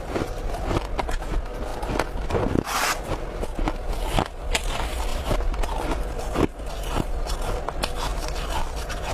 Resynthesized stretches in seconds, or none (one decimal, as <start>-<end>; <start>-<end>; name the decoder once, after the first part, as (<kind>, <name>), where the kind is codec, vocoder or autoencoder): 5.1-6.6 (vocoder, BigVGAN v2); 8.1-9.1